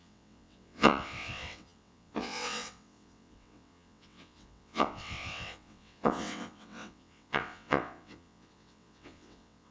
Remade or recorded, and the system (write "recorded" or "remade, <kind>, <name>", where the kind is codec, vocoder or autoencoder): remade, vocoder, WaveNeXt